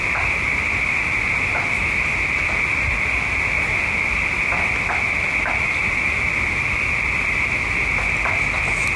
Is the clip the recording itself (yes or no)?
yes